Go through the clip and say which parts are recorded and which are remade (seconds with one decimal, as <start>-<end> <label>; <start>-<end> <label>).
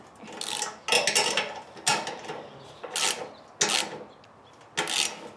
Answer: 0.0-5.4 recorded